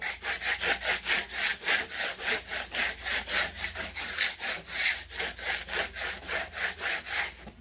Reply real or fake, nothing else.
real